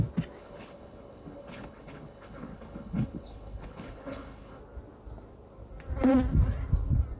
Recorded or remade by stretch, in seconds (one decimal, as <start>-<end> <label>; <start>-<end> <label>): 0.0-0.4 recorded; 0.4-4.6 remade; 4.6-7.2 recorded